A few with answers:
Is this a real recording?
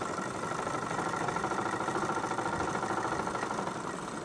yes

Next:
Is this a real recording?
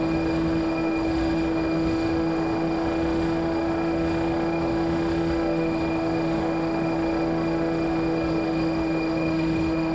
no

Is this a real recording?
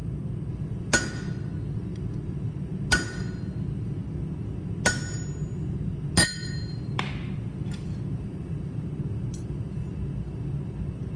yes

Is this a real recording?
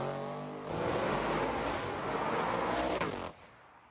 yes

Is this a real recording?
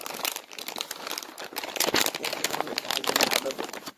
yes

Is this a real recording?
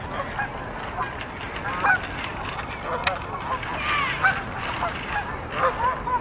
yes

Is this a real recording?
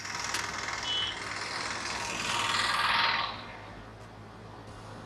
yes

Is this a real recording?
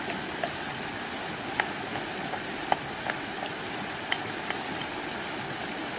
yes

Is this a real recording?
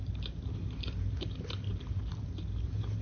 no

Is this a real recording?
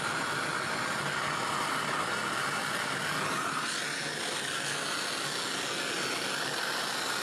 yes